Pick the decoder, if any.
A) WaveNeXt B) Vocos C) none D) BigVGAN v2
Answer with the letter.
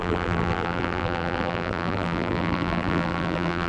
D